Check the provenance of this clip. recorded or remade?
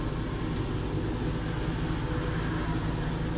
recorded